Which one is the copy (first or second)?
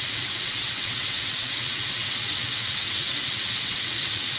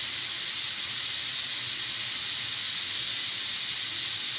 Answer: first